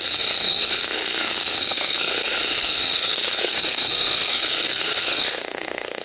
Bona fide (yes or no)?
no